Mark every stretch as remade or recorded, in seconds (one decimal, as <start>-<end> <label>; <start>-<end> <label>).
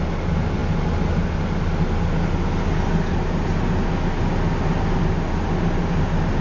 0.0-6.4 recorded